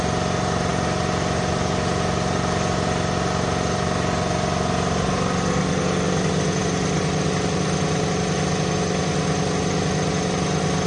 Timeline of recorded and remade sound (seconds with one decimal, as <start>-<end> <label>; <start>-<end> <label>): 0.0-10.9 recorded